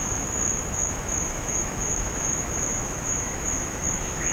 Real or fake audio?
fake